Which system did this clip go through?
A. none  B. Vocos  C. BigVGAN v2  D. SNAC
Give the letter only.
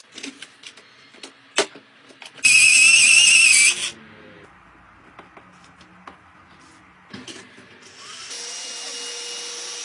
A